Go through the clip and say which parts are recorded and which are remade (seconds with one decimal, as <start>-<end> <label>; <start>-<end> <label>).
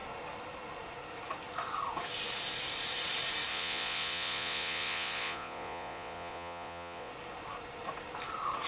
0.0-3.5 recorded; 3.5-7.1 remade; 7.1-8.7 recorded